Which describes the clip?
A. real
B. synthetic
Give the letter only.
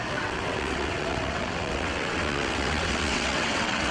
B